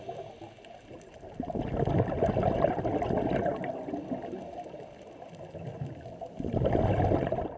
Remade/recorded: recorded